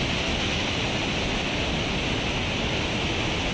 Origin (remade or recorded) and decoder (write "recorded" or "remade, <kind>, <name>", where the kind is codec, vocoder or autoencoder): recorded